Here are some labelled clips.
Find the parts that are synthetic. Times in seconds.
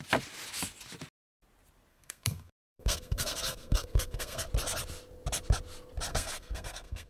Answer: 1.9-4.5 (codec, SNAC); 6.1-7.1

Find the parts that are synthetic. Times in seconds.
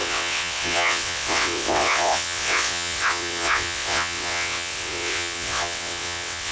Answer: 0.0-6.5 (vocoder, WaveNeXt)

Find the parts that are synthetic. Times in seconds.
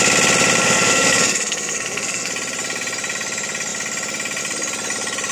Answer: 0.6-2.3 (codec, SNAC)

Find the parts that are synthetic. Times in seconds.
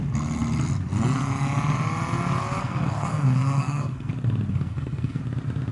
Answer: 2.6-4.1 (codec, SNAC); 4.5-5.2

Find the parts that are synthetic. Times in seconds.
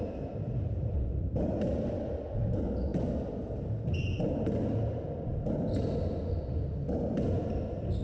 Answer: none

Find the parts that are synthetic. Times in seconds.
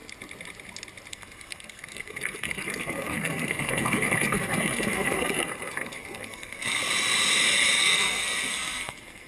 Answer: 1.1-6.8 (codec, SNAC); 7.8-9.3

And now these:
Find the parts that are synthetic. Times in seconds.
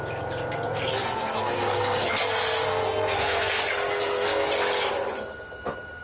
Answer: 0.9-4.5 (codec, SNAC)